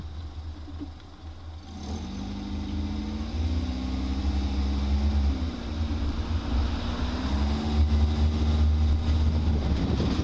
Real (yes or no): yes